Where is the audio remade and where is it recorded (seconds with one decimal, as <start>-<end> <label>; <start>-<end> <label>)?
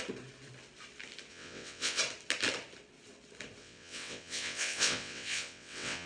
0.0-1.3 recorded; 1.3-2.0 remade; 2.0-3.6 recorded; 3.6-6.1 remade